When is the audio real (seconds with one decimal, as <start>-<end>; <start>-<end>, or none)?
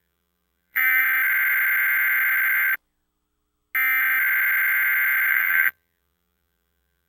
1.0-5.3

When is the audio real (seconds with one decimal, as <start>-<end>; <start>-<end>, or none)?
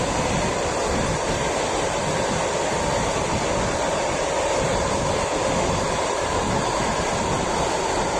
0.0-8.2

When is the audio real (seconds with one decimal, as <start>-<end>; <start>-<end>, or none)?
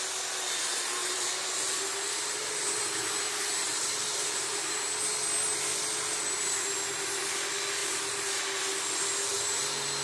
0.0-1.0; 4.9-7.8; 8.4-10.0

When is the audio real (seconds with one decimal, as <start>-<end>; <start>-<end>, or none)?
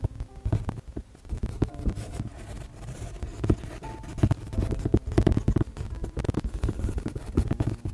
3.3-5.8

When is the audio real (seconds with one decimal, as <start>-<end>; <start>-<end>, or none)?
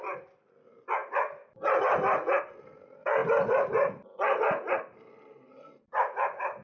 0.0-6.6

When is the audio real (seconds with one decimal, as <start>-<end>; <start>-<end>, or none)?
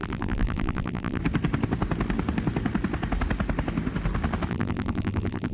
1.2-4.5